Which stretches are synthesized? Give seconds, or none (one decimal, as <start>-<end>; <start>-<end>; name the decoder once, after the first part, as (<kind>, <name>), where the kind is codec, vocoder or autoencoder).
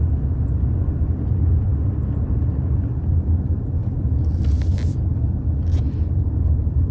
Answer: 3.8-4.7 (vocoder, BigVGAN v2)